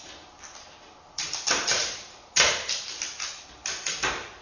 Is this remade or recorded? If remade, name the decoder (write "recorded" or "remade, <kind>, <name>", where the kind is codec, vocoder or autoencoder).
recorded